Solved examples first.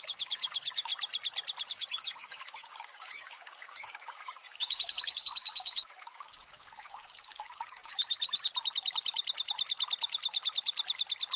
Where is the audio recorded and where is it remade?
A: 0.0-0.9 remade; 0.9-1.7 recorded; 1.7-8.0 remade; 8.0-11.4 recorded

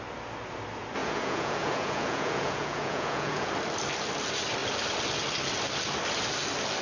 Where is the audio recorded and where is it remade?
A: 0.0-1.0 recorded; 1.0-3.5 remade; 3.5-6.8 recorded

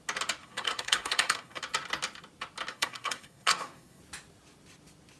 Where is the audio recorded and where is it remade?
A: 0.0-0.4 recorded; 0.4-1.6 remade; 1.6-2.7 recorded; 2.7-4.0 remade; 4.0-5.2 recorded

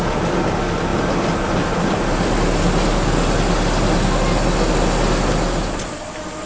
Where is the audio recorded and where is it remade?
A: 0.0-0.9 recorded; 0.9-1.9 remade; 1.9-6.5 recorded

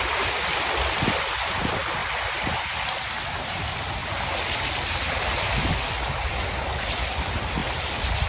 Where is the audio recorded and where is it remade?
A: 0.0-4.0 remade; 4.0-5.1 recorded; 5.1-8.3 remade

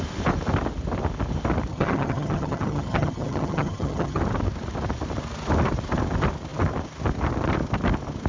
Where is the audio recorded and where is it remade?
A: 0.0-1.7 recorded; 1.7-4.2 remade; 4.2-8.3 recorded

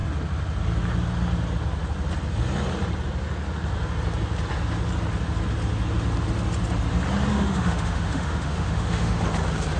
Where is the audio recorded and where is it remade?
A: 0.0-7.3 recorded; 7.3-9.2 remade; 9.2-9.8 recorded

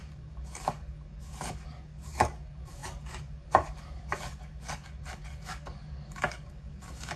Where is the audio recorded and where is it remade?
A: 0.0-7.2 remade